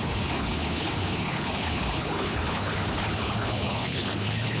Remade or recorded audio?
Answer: remade